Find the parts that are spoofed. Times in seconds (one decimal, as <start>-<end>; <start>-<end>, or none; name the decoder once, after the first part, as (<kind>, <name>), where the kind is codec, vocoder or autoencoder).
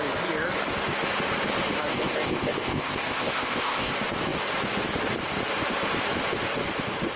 1.9-3.9 (codec, ZipCodec)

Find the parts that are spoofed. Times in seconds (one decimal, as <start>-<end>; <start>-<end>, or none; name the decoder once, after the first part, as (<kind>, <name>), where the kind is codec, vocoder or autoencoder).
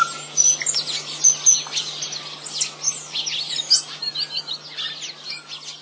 none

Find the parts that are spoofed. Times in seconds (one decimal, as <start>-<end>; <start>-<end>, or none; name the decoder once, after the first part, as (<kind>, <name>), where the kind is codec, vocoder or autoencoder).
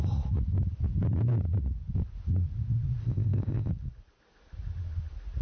3.0-3.7 (codec, ZipCodec)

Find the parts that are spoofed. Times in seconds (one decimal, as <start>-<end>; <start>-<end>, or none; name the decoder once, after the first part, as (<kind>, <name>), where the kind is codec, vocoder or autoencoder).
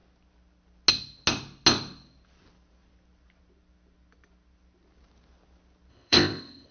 5.9-6.7 (codec, ZipCodec)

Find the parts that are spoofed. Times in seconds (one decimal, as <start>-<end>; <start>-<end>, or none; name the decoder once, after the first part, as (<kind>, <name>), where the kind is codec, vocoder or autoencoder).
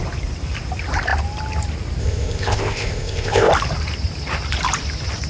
2.0-3.5 (codec, ZipCodec)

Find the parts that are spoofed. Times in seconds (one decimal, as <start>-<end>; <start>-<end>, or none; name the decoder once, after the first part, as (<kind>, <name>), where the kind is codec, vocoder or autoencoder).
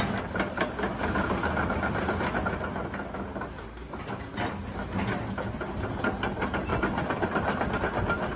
none